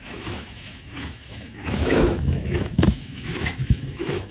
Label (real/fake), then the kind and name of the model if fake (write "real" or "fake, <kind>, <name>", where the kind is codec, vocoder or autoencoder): fake, autoencoder, DAC-VAE